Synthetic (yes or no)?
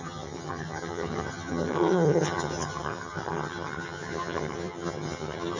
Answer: yes